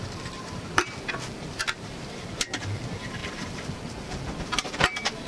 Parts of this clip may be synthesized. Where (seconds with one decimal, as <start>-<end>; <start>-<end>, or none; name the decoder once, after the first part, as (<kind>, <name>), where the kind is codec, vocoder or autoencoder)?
0.0-5.3 (vocoder, BigVGAN v2)